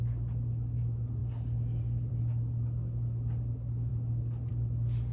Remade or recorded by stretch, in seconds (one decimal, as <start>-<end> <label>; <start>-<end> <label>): 0.0-5.1 recorded